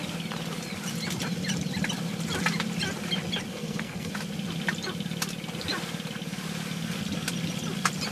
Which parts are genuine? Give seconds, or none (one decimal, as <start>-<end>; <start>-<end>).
0.0-3.5; 4.1-8.1